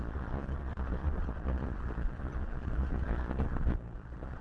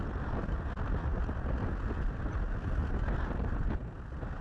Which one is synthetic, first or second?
first